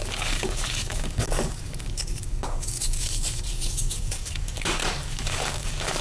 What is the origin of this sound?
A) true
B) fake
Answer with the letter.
B